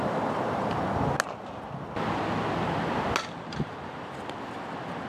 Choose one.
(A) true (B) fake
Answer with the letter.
A